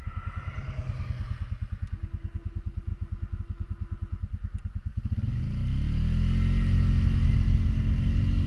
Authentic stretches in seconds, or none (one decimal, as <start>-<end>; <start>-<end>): 0.0-4.9; 5.4-8.5